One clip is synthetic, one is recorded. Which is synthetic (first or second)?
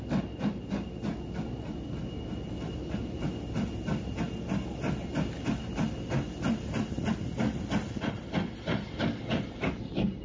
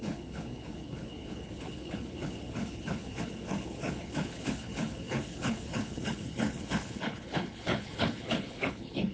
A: second